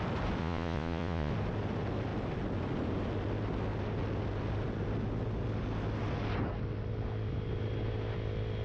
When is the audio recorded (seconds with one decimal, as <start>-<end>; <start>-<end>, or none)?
0.0-0.4; 1.3-8.6

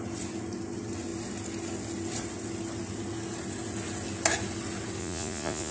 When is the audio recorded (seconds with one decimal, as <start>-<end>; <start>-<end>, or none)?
0.0-5.0

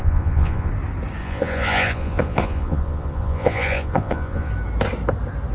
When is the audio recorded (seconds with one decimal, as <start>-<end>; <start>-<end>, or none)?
0.7-1.2; 4.5-5.5